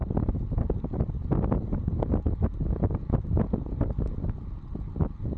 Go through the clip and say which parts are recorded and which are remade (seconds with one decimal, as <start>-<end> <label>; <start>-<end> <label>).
0.0-5.4 recorded